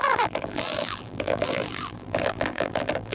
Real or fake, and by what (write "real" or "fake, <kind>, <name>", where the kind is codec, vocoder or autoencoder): fake, vocoder, BigVGAN v2